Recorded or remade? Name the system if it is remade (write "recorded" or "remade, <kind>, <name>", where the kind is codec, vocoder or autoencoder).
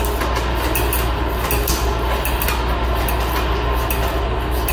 recorded